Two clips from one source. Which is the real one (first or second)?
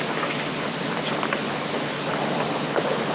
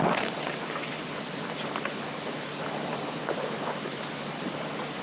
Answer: first